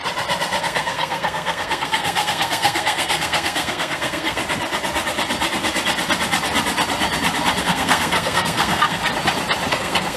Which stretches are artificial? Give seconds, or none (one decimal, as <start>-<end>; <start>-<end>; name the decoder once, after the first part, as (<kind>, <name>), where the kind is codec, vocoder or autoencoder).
0.6-4.4 (codec, SNAC); 7.6-9.0; 9.7-10.2